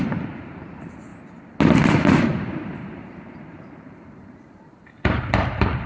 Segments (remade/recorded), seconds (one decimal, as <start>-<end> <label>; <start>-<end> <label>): 0.0-1.1 remade; 1.1-3.1 recorded; 3.1-5.9 remade

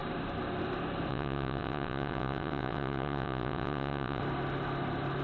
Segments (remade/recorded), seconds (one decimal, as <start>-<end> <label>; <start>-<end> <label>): 0.0-1.1 recorded; 1.1-4.2 remade; 4.2-5.2 recorded

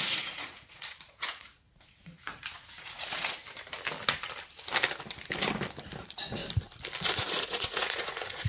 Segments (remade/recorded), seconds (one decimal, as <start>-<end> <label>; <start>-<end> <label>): 0.0-3.4 remade; 3.4-6.0 recorded; 6.0-6.4 remade; 6.4-7.2 recorded; 7.2-8.5 remade

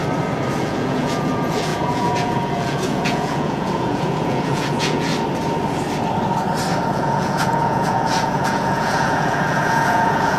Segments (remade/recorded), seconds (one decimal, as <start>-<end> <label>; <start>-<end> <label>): 0.0-0.6 recorded; 0.6-5.1 remade; 5.1-6.9 recorded; 6.9-10.4 remade

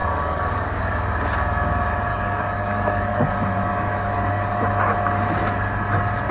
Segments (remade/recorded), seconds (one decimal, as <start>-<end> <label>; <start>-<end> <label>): 0.0-0.8 remade; 0.8-2.1 recorded; 2.1-3.3 remade; 3.3-3.7 recorded; 3.7-4.6 remade; 4.6-6.3 recorded